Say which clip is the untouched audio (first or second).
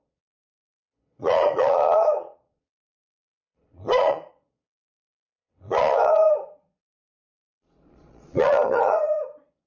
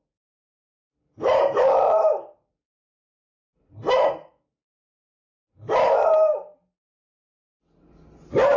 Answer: second